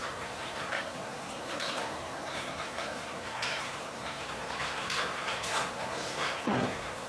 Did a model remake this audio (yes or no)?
yes